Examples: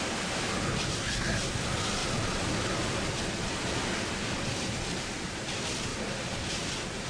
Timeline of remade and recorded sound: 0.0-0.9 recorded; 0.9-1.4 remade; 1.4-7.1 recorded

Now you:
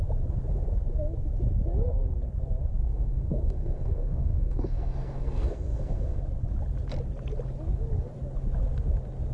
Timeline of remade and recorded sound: 0.0-2.8 recorded; 2.8-6.2 remade; 6.2-9.3 recorded

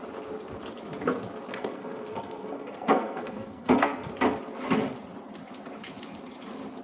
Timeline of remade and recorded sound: 0.0-1.5 recorded; 1.5-4.1 remade; 4.1-6.8 recorded

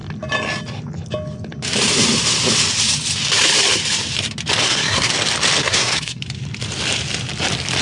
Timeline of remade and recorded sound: 0.0-4.6 recorded; 4.6-5.1 remade; 5.1-5.6 recorded; 5.6-6.2 remade; 6.2-7.8 recorded